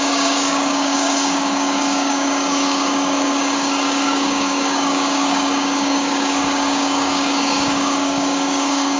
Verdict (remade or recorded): remade